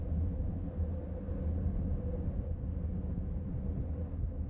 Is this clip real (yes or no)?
yes